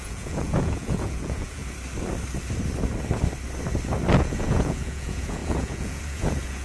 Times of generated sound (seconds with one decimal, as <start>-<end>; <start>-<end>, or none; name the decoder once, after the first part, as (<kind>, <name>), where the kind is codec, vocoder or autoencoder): 0.0-1.6 (vocoder, Vocos); 4.2-6.6